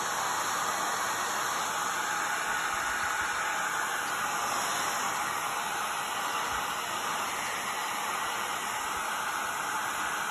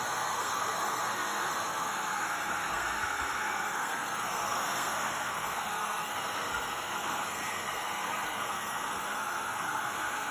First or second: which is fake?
second